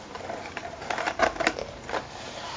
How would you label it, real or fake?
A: fake